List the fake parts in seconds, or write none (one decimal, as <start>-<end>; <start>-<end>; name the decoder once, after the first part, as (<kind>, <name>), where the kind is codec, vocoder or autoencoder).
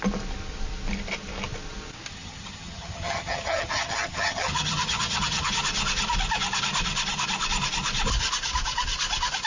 2.1-5.5 (vocoder, HiFi-GAN)